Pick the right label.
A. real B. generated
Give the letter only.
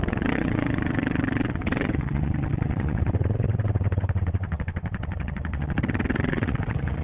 B